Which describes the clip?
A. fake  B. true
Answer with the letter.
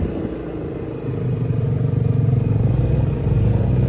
B